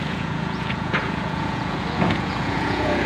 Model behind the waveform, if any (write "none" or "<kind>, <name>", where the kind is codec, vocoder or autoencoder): vocoder, Vocos